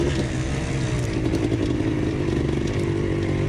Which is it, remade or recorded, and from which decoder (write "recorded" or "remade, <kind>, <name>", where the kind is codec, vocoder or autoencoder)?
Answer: recorded